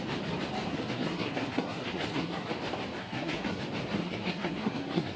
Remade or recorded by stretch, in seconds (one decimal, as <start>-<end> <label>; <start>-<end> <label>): 0.0-0.7 recorded; 0.7-2.5 remade; 2.5-3.0 recorded; 3.0-3.6 remade; 3.6-4.0 recorded; 4.0-5.2 remade